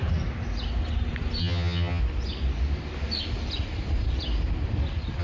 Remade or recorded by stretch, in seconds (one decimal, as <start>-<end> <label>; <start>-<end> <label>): 0.0-1.4 recorded; 1.4-2.0 remade; 2.0-5.2 recorded